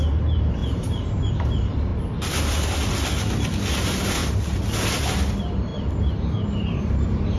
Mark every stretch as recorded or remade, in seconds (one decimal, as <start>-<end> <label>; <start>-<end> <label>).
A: 0.0-1.9 remade; 1.9-3.8 recorded; 3.8-4.2 remade; 4.2-5.0 recorded; 5.0-5.7 remade; 5.7-6.8 recorded; 6.8-7.4 remade